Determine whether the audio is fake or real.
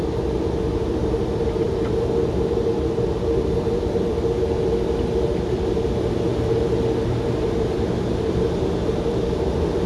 real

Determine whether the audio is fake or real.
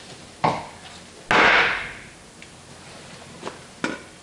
real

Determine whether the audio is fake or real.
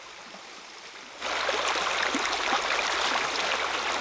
real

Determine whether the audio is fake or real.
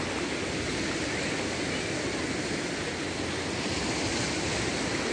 real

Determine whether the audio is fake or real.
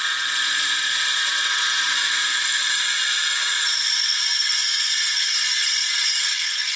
fake